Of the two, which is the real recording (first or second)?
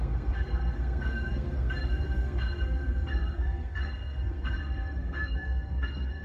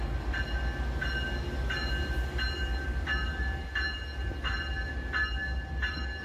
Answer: second